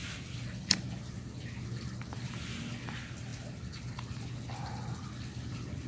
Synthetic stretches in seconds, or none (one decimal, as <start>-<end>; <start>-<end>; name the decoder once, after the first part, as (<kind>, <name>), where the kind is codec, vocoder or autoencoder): none